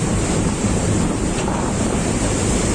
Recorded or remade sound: remade